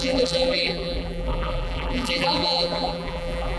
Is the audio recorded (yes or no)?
no